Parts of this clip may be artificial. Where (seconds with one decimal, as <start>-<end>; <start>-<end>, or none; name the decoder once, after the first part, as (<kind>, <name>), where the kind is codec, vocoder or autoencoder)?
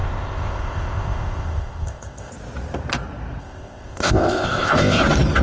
0.0-2.3 (codec, ZipCodec); 3.4-5.0